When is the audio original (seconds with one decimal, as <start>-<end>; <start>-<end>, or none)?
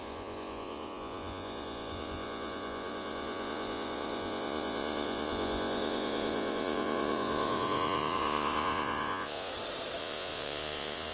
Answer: 9.5-10.0